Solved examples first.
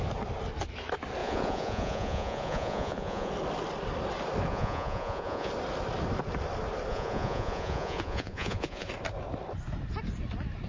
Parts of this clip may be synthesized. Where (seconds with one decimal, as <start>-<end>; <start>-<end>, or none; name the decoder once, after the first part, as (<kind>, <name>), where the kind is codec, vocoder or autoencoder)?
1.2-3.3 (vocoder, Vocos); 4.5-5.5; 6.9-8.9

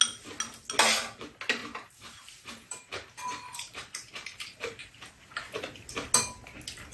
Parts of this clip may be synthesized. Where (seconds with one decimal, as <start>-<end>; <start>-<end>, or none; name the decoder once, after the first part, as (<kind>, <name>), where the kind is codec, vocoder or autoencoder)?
1.6-4.8 (vocoder, BigVGAN v2)

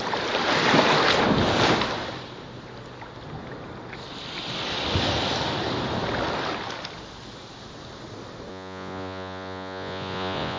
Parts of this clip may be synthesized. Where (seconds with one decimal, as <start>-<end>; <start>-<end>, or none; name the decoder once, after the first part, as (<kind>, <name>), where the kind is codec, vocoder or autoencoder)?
8.5-10.6 (vocoder, Vocos)

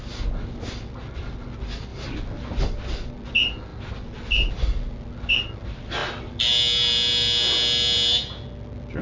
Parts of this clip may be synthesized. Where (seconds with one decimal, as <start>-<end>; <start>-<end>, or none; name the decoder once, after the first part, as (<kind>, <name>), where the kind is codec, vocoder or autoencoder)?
none

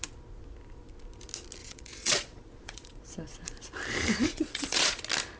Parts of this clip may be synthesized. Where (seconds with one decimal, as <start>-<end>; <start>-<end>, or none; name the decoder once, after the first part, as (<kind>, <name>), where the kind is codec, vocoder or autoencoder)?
1.6-3.0 (vocoder, Vocos); 4.2-5.0